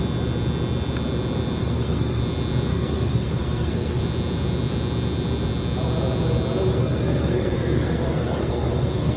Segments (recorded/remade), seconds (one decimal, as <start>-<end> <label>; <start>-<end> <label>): 0.0-1.6 recorded; 1.6-2.2 remade; 2.2-2.7 recorded; 2.7-4.0 remade; 4.0-6.7 recorded; 6.7-9.2 remade